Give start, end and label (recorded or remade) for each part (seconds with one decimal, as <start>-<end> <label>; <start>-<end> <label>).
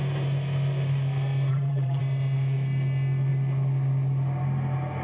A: 0.0-1.5 recorded; 1.5-2.0 remade; 2.0-5.0 recorded